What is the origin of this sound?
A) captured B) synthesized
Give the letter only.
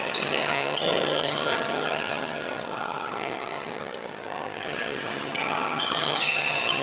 B